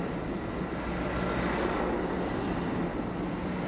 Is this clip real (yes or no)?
yes